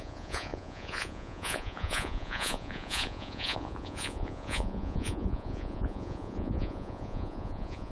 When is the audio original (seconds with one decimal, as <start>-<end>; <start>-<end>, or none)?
none